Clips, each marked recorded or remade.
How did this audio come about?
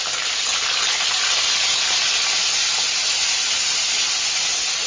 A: recorded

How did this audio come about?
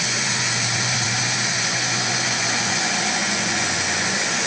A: remade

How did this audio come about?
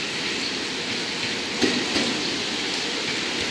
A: recorded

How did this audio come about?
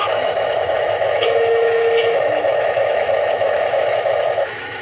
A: remade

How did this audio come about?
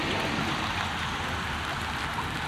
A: recorded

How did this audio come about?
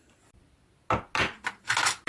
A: recorded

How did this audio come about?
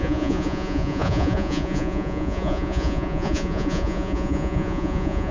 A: remade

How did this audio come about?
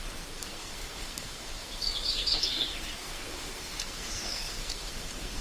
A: remade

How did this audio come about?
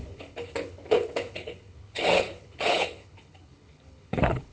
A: remade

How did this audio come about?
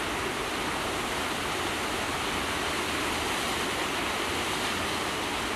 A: recorded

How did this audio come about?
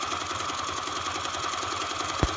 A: recorded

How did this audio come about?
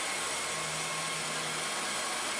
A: recorded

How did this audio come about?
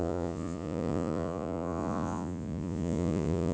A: remade